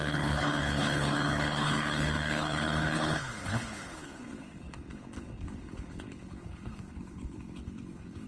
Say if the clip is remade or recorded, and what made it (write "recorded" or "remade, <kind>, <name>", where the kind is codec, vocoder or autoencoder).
remade, codec, HILCodec